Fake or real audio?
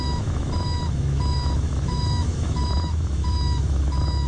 fake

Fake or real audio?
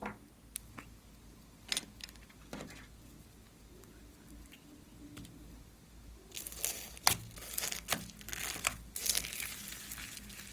real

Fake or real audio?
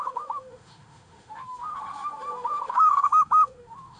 fake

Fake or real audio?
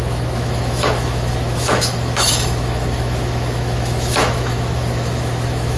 fake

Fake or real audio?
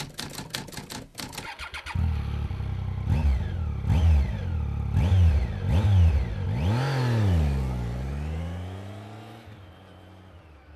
real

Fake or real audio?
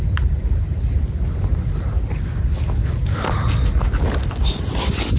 real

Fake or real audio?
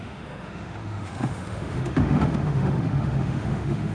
fake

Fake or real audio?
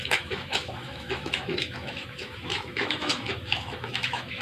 fake